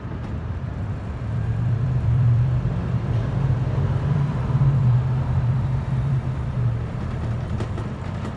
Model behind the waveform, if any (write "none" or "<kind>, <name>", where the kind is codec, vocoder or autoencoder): vocoder, BigVGAN v2